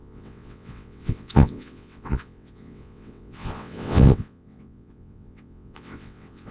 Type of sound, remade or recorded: remade